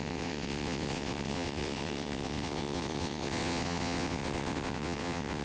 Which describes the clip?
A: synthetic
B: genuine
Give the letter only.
A